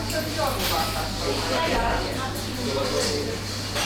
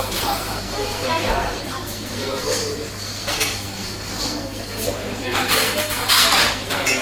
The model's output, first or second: second